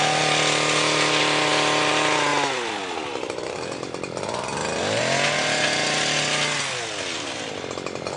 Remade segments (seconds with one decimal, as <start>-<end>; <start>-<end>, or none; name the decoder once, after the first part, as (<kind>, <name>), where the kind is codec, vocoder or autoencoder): none